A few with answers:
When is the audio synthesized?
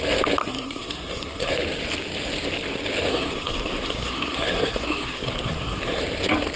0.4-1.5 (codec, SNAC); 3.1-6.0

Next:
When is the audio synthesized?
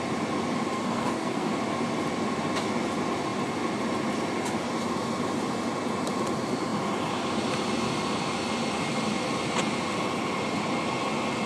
0.7-1.5 (codec, SNAC)